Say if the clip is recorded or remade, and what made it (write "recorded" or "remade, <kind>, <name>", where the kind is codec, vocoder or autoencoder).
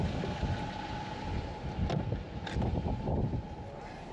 recorded